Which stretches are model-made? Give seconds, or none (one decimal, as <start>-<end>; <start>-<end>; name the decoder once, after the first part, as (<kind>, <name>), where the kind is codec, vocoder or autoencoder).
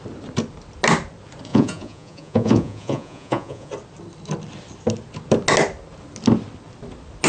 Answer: 1.5-3.7 (vocoder, Vocos)